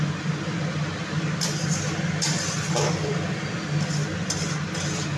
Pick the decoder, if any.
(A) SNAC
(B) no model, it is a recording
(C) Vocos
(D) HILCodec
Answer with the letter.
B